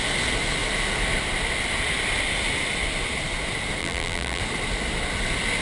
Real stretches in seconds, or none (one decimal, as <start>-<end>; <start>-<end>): 0.0-3.8; 4.4-5.6